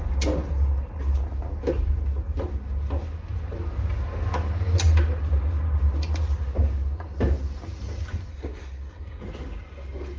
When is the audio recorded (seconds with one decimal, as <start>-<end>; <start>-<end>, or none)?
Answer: 0.0-8.3; 9.2-10.2